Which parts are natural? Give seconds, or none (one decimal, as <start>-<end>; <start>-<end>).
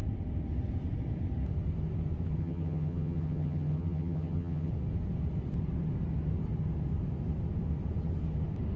0.0-2.4; 4.7-8.8